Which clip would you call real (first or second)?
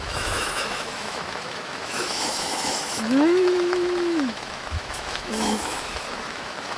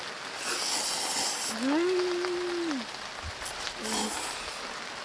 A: second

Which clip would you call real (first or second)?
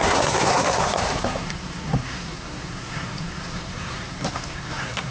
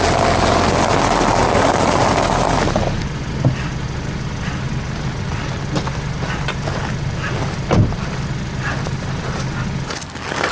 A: second